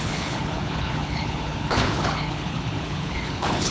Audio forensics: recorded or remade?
remade